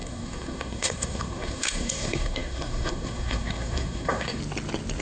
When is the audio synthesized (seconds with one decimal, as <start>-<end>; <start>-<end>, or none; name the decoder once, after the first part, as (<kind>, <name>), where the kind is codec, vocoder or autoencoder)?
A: 0.0-4.4 (codec, SNAC)